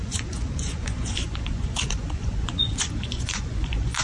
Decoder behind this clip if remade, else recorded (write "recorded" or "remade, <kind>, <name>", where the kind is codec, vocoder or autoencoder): remade, vocoder, Vocos